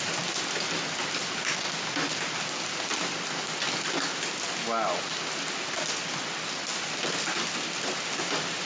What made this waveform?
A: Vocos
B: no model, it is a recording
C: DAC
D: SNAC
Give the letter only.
B